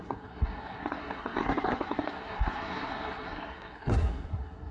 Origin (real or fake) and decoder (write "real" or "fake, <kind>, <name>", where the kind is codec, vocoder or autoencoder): fake, codec, SNAC